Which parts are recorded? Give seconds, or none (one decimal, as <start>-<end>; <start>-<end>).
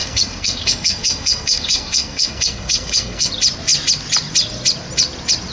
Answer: 3.3-5.5